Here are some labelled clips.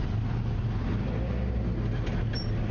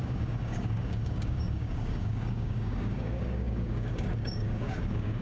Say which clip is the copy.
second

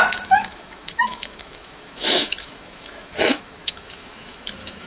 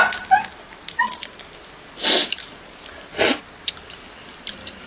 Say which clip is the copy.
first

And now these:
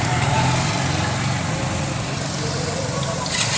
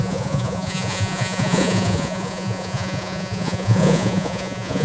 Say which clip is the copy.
second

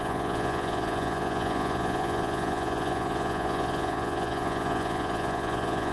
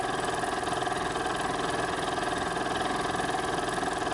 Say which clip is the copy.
first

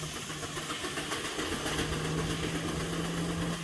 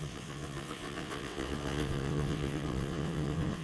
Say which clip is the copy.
second